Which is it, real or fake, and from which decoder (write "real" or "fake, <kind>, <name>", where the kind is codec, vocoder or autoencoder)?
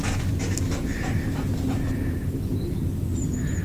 real